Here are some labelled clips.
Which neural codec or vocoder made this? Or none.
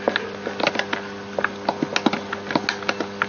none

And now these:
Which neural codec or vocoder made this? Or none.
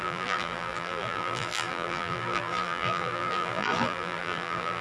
vocoder, BigVGAN v2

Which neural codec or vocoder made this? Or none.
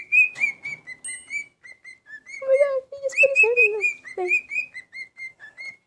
none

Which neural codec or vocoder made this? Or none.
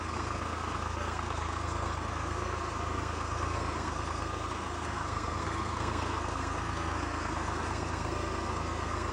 codec, SNAC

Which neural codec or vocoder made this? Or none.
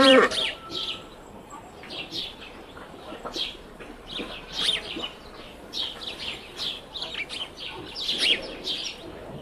vocoder, BigVGAN v2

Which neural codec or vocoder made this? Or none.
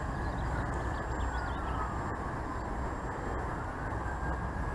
none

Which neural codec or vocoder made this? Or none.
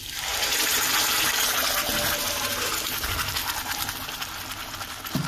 none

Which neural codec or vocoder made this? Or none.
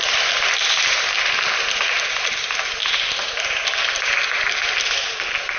none